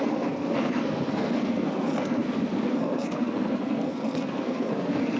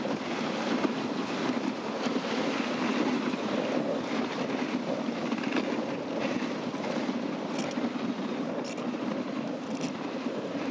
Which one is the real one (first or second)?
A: second